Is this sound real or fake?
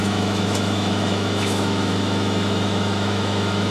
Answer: fake